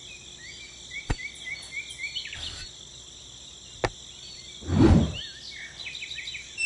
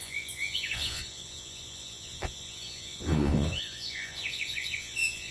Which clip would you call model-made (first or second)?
second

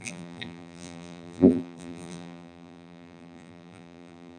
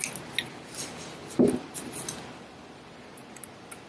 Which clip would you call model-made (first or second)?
first